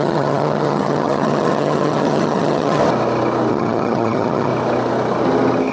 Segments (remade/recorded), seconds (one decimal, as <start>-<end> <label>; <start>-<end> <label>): 0.0-2.8 remade; 2.8-3.5 recorded; 3.5-4.5 remade; 4.5-5.7 recorded